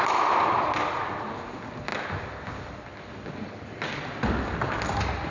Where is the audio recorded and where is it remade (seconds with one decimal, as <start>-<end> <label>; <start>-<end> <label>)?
0.0-5.3 recorded